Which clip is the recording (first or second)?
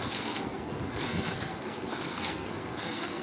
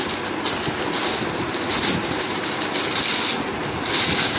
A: second